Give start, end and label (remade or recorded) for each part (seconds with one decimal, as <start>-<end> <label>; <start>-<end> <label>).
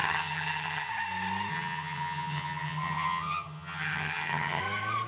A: 0.0-0.9 remade; 0.9-1.5 recorded; 1.5-4.6 remade; 4.6-5.1 recorded